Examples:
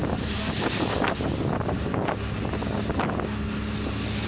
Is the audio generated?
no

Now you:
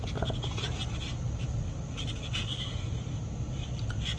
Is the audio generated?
no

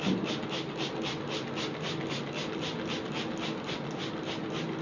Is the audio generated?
no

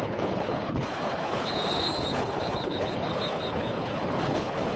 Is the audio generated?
yes